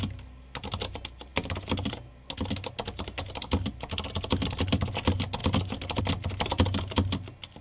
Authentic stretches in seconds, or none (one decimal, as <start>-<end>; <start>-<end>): 0.0-7.6